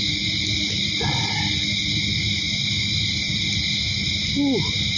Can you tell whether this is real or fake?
real